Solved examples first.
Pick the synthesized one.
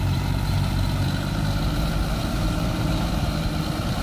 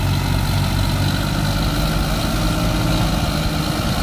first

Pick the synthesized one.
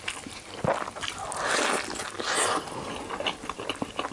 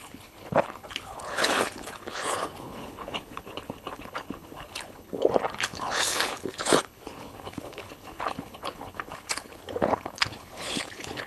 second